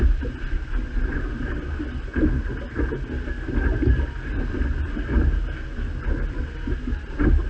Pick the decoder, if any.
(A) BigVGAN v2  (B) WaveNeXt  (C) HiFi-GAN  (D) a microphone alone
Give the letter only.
D